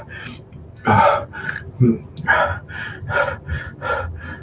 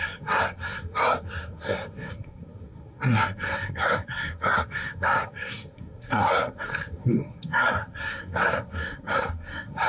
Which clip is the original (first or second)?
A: first